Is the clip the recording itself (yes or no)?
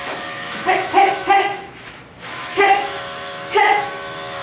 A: no